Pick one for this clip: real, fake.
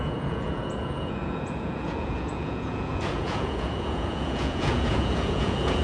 fake